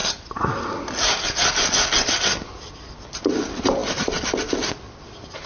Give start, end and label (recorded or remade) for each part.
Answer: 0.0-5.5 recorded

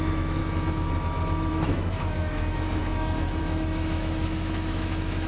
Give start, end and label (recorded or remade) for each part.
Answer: 0.0-0.4 remade; 0.4-1.5 recorded; 1.5-5.3 remade

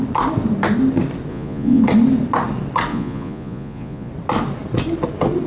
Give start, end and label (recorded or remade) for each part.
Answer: 0.0-1.3 recorded; 1.3-1.8 remade; 1.8-2.9 recorded; 2.9-4.1 remade; 4.1-5.5 recorded

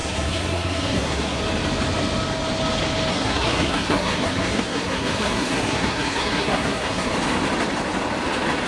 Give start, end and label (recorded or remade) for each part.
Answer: 0.0-1.4 remade; 1.4-3.1 recorded; 3.1-7.1 remade; 7.1-8.7 recorded

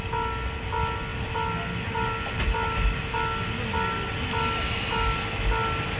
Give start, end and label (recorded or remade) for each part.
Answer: 0.0-6.0 recorded

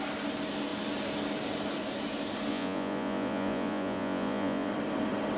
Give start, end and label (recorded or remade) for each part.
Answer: 0.0-2.5 recorded; 2.5-4.7 remade; 4.7-5.4 recorded

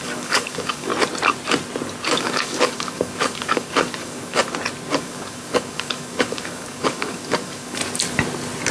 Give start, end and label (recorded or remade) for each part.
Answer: 0.0-0.9 remade; 0.9-2.2 recorded; 2.2-4.4 remade; 4.4-4.9 recorded; 4.9-7.8 remade; 7.8-8.7 recorded

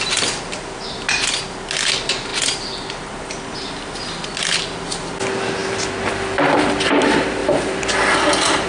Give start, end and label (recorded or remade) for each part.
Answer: 0.0-7.4 recorded; 7.4-8.7 remade